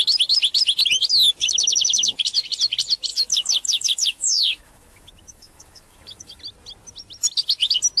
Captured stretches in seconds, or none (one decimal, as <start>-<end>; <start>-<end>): 0.0-3.1; 6.4-8.0